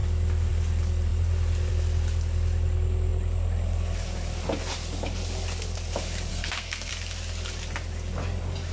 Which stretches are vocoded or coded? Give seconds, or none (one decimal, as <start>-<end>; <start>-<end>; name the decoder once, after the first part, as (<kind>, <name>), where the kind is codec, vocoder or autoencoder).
6.3-6.9 (codec, SNAC)